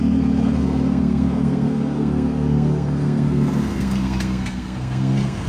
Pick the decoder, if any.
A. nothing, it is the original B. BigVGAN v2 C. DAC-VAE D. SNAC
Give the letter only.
D